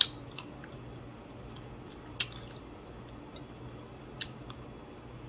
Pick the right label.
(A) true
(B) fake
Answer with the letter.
A